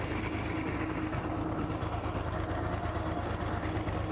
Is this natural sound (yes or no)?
yes